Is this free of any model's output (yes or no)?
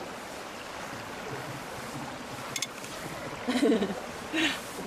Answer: yes